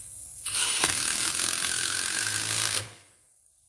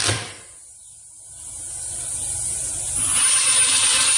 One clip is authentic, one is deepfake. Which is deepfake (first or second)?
first